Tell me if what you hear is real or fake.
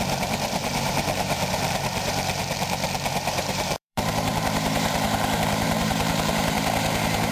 fake